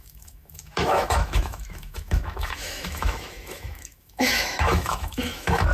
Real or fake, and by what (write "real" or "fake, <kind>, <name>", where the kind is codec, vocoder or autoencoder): fake, autoencoder, DAC-VAE